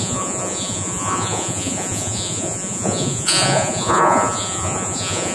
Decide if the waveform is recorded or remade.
remade